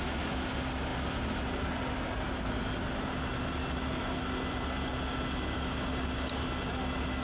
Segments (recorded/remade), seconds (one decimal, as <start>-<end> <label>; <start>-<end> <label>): 0.0-7.2 recorded